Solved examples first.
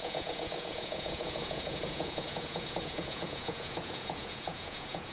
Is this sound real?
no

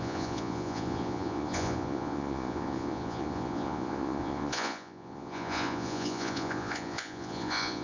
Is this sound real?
no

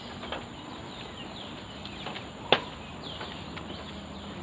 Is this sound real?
yes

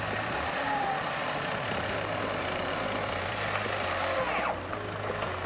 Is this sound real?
yes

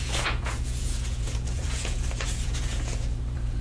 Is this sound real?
no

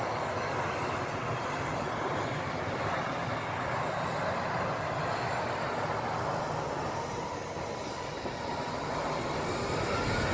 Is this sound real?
yes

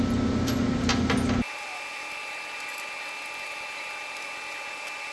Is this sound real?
yes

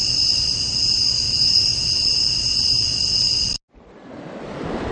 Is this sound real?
yes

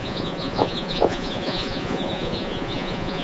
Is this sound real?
no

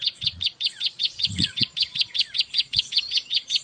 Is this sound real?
no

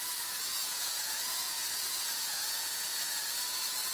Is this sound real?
no